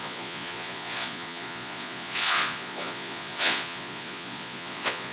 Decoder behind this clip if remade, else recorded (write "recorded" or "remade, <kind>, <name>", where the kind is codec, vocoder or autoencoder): remade, vocoder, Vocos